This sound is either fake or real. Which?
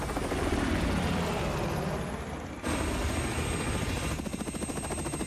real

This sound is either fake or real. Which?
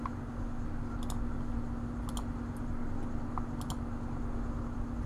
real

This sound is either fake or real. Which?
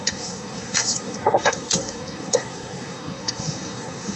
fake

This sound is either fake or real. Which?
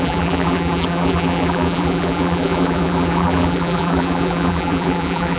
fake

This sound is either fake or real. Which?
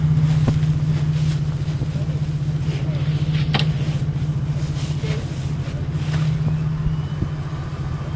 real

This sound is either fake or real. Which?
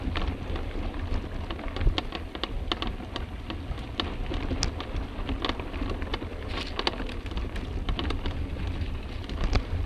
real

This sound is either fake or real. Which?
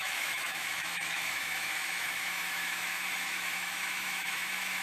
fake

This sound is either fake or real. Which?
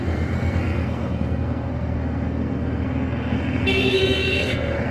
fake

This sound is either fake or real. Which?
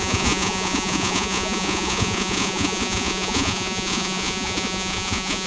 fake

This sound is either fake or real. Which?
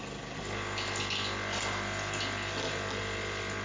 real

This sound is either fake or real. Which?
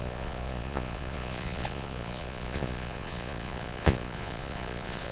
fake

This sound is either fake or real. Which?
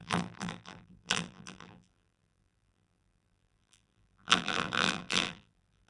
fake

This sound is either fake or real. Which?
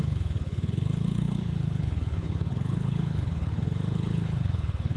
fake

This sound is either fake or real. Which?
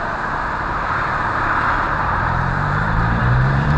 fake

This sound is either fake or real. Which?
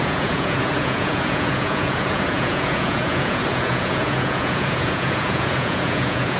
fake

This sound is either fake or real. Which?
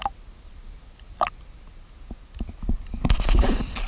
real